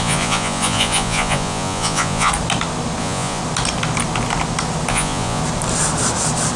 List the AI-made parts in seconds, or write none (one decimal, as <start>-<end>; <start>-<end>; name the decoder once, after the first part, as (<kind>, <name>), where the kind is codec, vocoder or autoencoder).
0.0-2.3 (vocoder, Vocos); 3.0-3.4; 4.9-5.4